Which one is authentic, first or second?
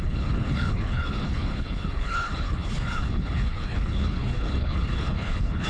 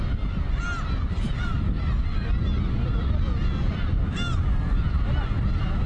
second